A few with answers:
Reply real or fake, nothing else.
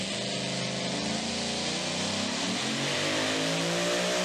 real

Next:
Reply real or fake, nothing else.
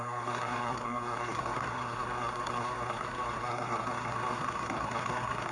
fake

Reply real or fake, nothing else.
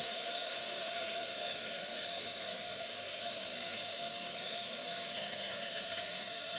fake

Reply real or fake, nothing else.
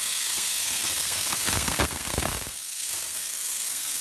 fake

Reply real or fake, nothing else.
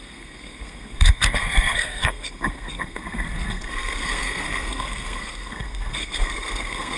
fake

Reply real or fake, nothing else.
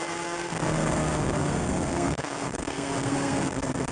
fake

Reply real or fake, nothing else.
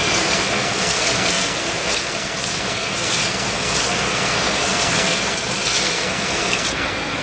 fake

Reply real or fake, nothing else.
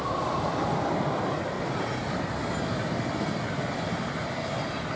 real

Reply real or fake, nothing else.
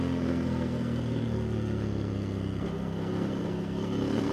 fake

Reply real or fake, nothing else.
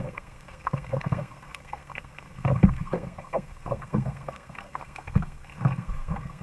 fake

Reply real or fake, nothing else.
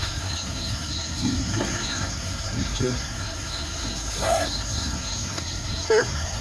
fake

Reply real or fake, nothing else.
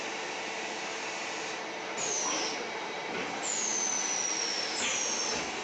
real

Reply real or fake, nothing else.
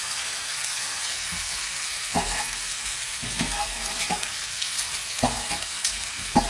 fake